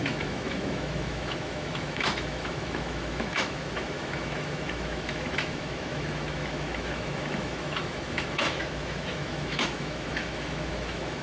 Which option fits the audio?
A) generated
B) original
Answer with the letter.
A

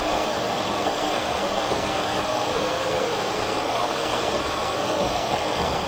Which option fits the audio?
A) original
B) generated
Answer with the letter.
B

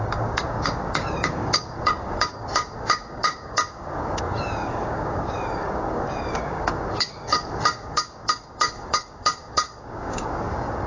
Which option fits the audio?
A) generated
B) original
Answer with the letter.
A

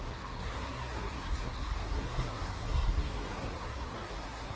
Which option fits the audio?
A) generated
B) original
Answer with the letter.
A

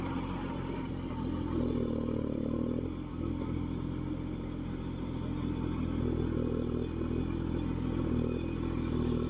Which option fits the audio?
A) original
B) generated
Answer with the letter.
A